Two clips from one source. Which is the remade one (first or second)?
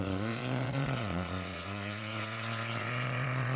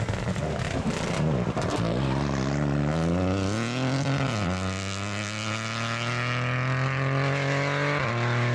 first